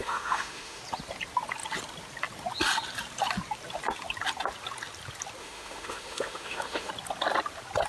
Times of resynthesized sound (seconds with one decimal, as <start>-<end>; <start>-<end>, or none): 0.0-0.8; 5.4-6.9